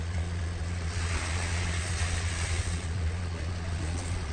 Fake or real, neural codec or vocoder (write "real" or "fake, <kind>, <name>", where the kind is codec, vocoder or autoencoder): fake, vocoder, Vocos